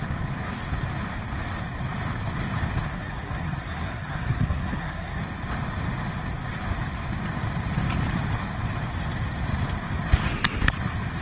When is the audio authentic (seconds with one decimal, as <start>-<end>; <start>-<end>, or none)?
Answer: 0.0-2.9; 5.2-11.2